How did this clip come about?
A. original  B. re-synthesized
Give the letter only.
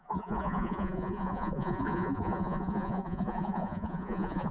B